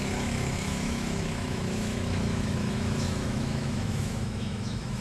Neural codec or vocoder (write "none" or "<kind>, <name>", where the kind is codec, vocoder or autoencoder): autoencoder, DAC-VAE